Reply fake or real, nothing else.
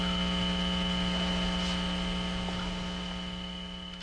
real